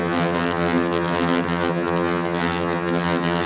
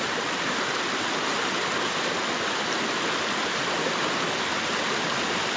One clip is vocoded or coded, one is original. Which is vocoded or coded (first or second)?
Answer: first